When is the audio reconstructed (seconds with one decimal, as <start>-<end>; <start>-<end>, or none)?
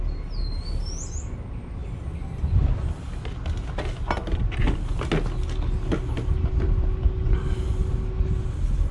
none